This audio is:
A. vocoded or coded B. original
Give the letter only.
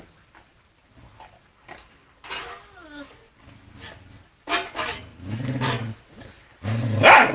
B